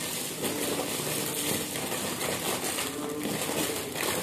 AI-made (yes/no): no